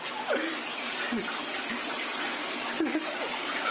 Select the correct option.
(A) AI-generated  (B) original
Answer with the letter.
A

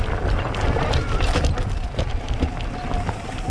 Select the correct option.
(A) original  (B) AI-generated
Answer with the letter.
A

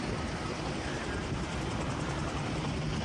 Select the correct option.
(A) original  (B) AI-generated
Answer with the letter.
A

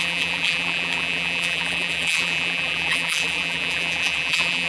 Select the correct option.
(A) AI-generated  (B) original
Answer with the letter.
A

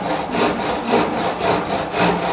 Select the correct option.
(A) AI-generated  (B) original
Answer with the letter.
A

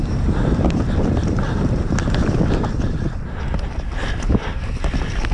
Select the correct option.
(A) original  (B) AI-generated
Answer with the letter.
B